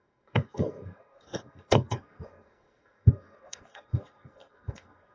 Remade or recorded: remade